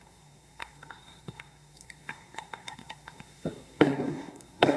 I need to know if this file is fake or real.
fake